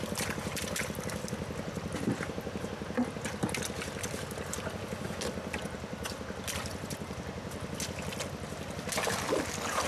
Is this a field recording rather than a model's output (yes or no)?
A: yes